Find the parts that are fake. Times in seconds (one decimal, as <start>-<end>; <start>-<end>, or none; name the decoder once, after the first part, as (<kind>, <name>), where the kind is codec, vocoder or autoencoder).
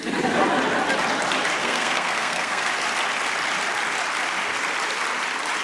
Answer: 1.6-2.7 (codec, SNAC)